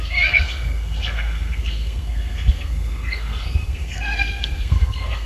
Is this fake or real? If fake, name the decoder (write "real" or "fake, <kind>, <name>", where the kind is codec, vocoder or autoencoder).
fake, codec, SNAC